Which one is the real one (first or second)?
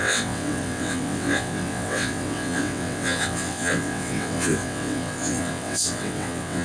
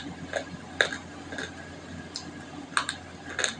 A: second